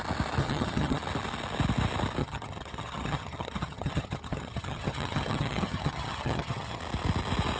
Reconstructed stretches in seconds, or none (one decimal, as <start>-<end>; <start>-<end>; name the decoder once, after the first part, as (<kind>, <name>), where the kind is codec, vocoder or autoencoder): 0.4-1.0 (vocoder, HiFi-GAN); 2.2-6.8